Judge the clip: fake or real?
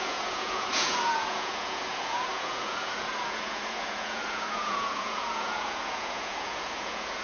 fake